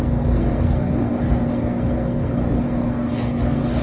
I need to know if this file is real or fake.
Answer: fake